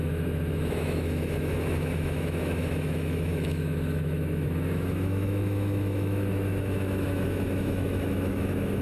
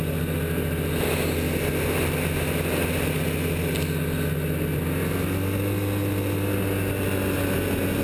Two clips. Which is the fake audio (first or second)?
first